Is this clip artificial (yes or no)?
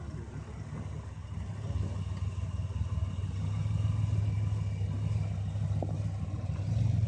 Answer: no